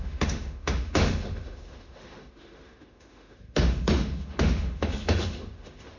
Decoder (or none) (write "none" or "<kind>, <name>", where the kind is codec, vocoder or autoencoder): autoencoder, DAC-VAE